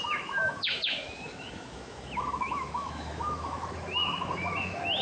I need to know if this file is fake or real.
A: fake